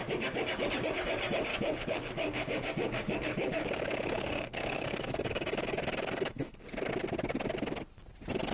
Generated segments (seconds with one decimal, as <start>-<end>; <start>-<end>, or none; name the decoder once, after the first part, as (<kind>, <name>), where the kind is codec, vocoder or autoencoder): 0.0-1.0 (codec, DAC); 1.5-6.6